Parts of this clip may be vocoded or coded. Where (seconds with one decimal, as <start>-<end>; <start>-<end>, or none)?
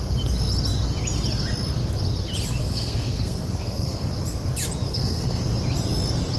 2.6-4.1; 4.9-5.4